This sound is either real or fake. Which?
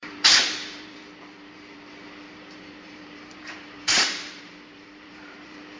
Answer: fake